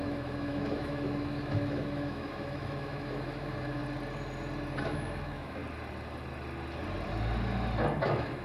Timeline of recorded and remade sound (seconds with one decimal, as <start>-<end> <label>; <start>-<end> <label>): 0.0-3.8 remade; 3.8-4.8 recorded; 4.8-5.6 remade; 5.6-8.0 recorded; 8.0-8.4 remade